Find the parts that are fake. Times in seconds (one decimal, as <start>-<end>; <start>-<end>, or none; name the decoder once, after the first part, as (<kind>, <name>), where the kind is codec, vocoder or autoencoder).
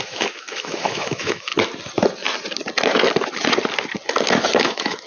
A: 0.0-1.5 (autoencoder, DAC-VAE); 4.6-5.1